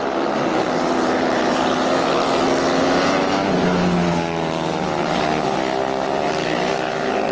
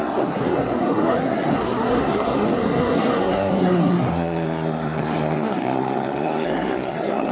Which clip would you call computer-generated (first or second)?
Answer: second